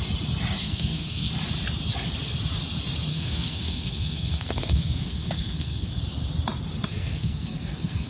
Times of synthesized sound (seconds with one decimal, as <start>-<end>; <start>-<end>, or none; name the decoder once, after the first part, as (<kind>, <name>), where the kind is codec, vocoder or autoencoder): 0.6-1.3 (codec, SNAC); 3.1-6.0; 6.9-8.1